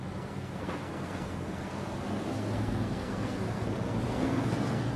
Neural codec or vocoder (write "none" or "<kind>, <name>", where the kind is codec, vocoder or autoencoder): codec, SNAC